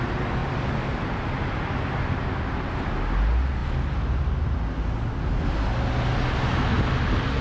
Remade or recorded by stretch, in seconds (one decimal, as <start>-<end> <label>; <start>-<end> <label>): 0.0-7.4 recorded